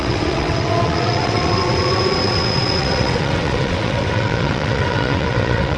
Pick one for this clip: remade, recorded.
remade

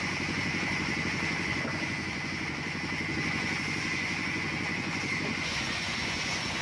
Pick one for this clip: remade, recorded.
remade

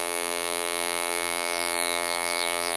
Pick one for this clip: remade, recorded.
remade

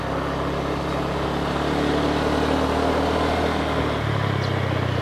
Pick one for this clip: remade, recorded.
recorded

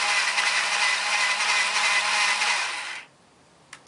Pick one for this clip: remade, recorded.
recorded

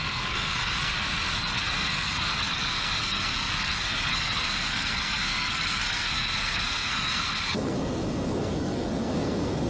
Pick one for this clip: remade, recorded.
remade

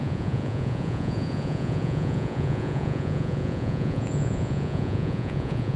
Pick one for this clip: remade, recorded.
remade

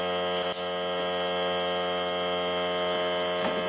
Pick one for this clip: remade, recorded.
recorded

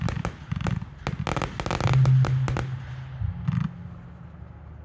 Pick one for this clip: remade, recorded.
recorded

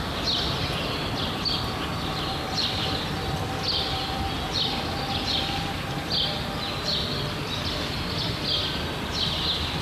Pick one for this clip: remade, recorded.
recorded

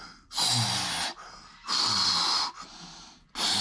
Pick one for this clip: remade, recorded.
recorded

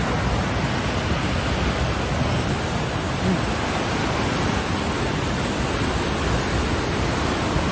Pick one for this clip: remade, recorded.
recorded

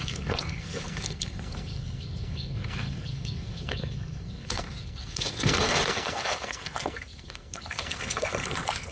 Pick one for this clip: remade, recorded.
remade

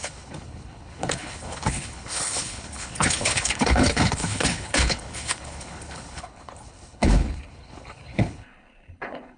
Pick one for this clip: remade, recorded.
remade